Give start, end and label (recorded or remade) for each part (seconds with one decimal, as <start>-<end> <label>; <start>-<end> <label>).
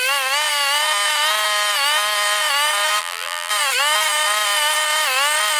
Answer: 0.0-3.0 recorded; 3.0-3.5 remade; 3.5-5.6 recorded